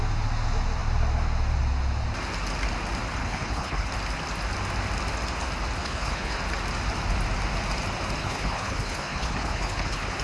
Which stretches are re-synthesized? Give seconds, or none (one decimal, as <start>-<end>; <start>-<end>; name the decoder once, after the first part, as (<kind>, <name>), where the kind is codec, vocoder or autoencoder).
3.2-3.9 (codec, HILCodec); 5.8-6.4; 8.2-10.2